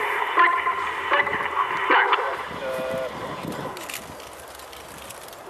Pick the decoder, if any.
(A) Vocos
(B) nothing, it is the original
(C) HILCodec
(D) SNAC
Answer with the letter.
B